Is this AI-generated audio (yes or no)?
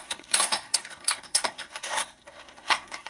yes